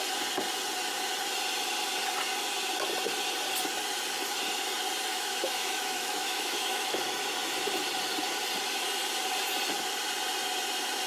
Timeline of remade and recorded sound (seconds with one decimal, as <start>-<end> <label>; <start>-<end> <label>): 0.0-5.1 recorded; 5.1-7.0 remade; 7.0-11.1 recorded